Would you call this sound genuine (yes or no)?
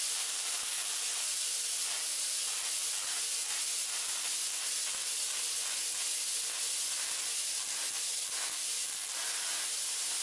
yes